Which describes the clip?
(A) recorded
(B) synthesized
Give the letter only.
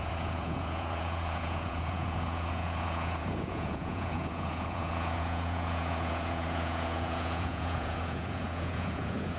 B